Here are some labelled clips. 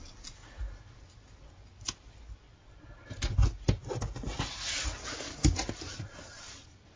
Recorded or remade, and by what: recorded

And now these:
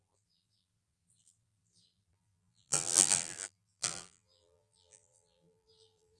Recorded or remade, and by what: remade, vocoder, BigVGAN v2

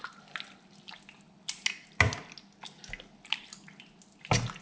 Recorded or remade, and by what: recorded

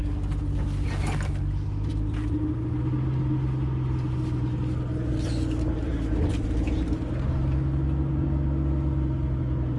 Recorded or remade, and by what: recorded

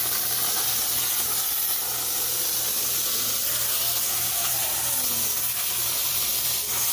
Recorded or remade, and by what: recorded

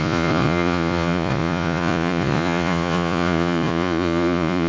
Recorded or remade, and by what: remade, vocoder, Vocos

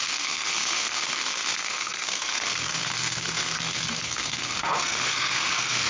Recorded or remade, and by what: remade, codec, SNAC